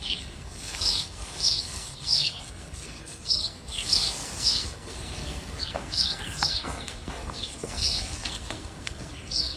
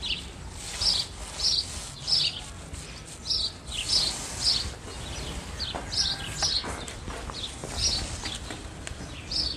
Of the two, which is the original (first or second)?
second